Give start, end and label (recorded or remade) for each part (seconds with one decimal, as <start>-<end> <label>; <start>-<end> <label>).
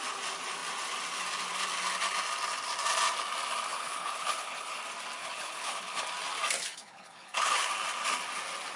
0.0-3.7 recorded; 3.7-4.8 remade; 4.8-5.2 recorded; 5.2-6.0 remade; 6.0-6.7 recorded; 6.7-7.7 remade; 7.7-8.8 recorded